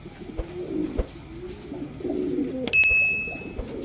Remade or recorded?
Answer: recorded